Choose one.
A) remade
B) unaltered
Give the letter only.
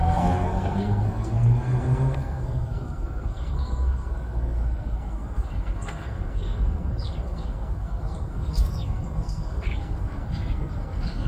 A